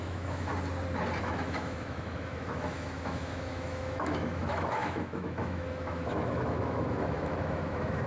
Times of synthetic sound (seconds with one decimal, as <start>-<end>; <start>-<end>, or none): 0.0-0.5; 1.2-8.1

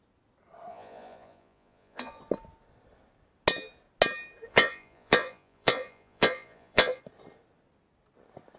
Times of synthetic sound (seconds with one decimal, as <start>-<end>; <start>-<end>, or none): 0.7-2.2; 4.5-7.0

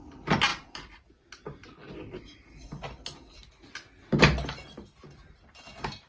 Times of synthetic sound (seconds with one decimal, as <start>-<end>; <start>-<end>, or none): none

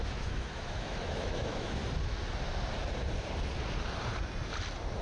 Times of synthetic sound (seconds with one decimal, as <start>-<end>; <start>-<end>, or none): 0.0-1.8

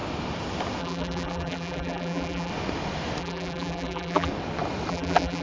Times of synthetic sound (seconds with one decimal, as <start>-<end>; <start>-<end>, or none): 0.8-2.5; 3.2-4.3; 4.9-5.4